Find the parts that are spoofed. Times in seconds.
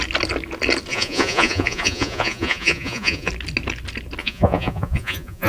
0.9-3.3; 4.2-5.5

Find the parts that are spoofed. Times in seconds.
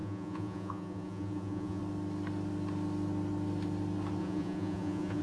0.0-1.8; 4.2-5.2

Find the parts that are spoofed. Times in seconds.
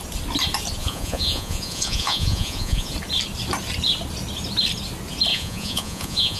0.8-2.9; 5.3-6.4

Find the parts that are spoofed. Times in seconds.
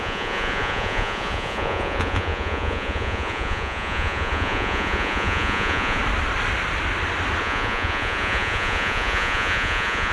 0.0-6.0; 7.4-10.1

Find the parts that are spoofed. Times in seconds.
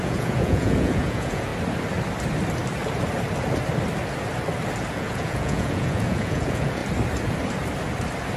0.0-1.5; 4.9-6.8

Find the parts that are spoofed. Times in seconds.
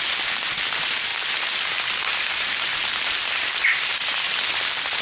none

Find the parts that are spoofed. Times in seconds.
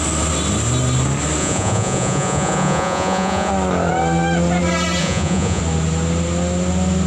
1.4-3.5; 5.0-5.6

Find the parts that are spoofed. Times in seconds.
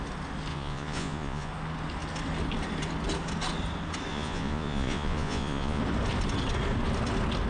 0.5-1.5; 4.1-5.8